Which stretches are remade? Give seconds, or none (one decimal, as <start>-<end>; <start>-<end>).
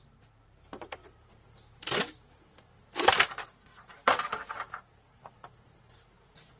none